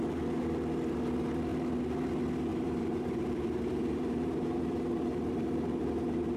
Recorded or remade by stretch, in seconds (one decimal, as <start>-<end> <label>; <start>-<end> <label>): 0.0-2.5 recorded; 2.5-6.4 remade